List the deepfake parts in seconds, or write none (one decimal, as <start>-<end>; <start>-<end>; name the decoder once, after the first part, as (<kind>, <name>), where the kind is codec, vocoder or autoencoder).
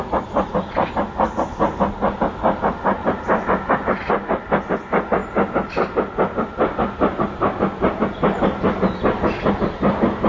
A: none